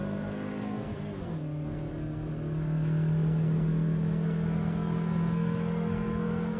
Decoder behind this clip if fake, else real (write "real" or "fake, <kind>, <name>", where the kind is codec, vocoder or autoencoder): fake, codec, SNAC